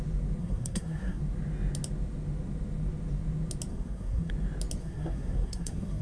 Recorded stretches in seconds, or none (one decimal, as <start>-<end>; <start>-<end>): 0.0-0.4; 1.2-3.7; 4.3-4.8